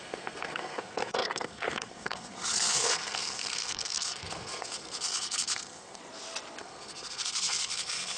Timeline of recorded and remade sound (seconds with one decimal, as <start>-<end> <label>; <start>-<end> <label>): 0.0-6.0 remade; 6.0-6.6 recorded; 6.6-8.2 remade

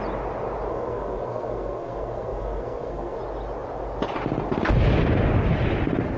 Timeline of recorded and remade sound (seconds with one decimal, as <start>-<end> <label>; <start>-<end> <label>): 0.0-0.7 recorded; 0.7-3.2 remade; 3.2-6.2 recorded

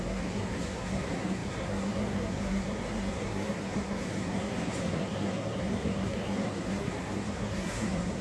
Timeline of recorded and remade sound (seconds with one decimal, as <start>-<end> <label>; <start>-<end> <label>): 0.0-8.2 remade

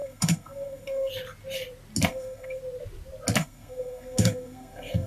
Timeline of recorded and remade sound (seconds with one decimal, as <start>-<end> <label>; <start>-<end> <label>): 0.0-1.1 remade; 1.1-2.1 recorded; 2.1-2.6 remade; 2.6-3.4 recorded; 3.4-5.1 remade

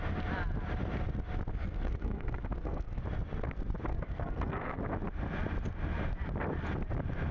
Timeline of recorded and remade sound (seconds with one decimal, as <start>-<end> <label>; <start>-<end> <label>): 0.0-1.5 recorded; 1.5-3.0 remade; 3.0-3.9 recorded; 3.9-4.8 remade; 4.8-7.3 recorded

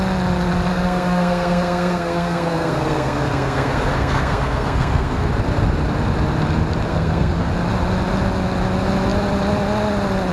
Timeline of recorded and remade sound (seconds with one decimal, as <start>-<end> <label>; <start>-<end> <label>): 0.0-0.7 recorded; 0.7-5.3 remade; 5.3-6.9 recorded; 6.9-7.5 remade; 7.5-10.3 recorded

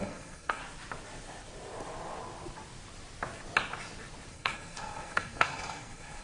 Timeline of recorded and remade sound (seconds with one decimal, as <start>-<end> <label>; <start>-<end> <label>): 0.0-0.6 remade; 0.6-4.3 recorded; 4.3-6.2 remade